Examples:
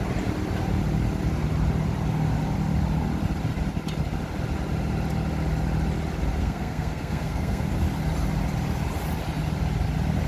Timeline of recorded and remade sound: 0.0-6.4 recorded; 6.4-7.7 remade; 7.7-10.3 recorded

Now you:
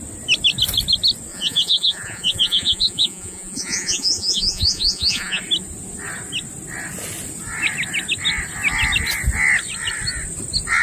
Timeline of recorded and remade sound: 0.0-1.3 recorded; 1.3-5.4 remade; 5.4-10.8 recorded

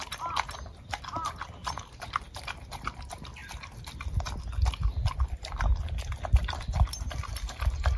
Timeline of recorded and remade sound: 0.0-1.6 recorded; 1.6-2.2 remade; 2.2-8.0 recorded

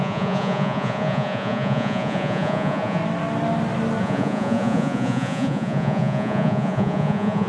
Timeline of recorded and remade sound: 0.0-3.0 remade; 3.0-4.0 recorded; 4.0-7.5 remade

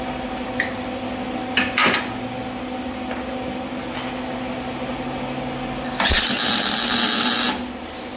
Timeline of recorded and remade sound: 0.0-8.2 recorded

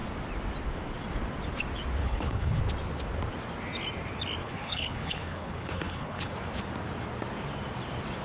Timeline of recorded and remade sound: 0.0-2.0 recorded; 2.0-2.6 remade; 2.6-4.4 recorded; 4.4-6.3 remade; 6.3-8.2 recorded

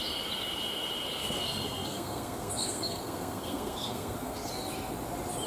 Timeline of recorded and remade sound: 0.0-1.2 recorded; 1.2-4.5 remade; 4.5-5.5 recorded